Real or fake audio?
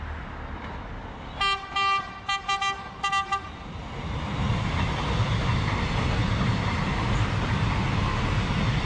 real